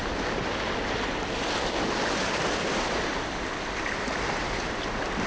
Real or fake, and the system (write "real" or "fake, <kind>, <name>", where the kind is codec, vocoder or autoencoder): real